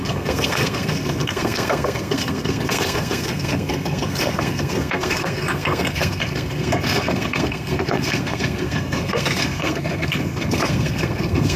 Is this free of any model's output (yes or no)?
no